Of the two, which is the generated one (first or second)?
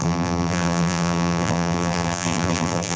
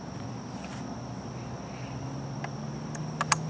first